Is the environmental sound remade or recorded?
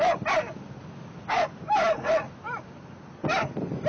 recorded